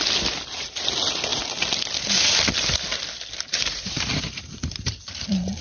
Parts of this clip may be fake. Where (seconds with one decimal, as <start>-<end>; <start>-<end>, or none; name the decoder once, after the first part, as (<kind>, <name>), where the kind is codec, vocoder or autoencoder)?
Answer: 3.5-5.1 (vocoder, BigVGAN v2)